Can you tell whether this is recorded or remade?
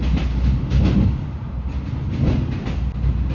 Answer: recorded